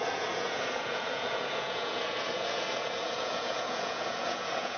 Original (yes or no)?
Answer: no